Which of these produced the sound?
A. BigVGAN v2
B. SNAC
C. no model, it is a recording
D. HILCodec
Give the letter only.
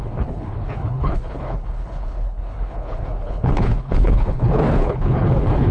D